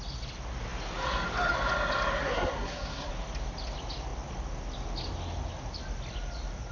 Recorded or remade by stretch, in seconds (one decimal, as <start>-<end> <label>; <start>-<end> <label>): 0.0-2.2 recorded; 2.2-3.1 remade; 3.1-6.7 recorded